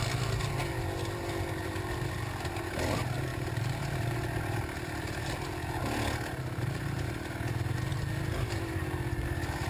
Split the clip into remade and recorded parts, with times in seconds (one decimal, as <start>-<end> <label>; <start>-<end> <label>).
0.0-9.7 recorded